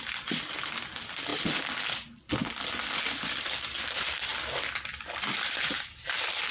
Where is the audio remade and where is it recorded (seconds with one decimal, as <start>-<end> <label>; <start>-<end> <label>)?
0.0-6.5 recorded